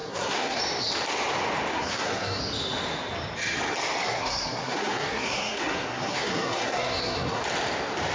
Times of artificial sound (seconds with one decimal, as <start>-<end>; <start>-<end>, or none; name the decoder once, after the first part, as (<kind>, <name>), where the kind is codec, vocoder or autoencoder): 0.0-0.6 (codec, SNAC); 1.7-2.4; 4.0-7.4